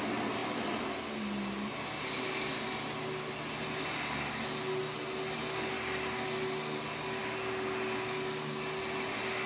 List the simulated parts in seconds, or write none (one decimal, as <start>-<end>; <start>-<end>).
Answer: none